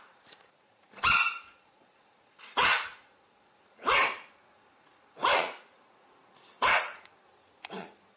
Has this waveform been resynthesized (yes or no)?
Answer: yes